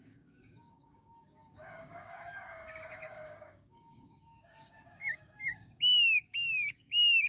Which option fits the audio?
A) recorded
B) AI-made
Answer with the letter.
B